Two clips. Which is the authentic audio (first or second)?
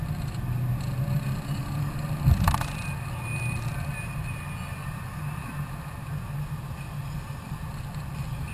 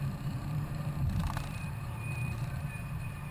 first